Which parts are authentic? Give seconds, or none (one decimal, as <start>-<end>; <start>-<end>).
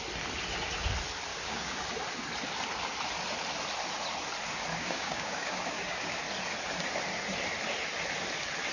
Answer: 0.0-1.3; 1.8-4.7; 6.2-8.7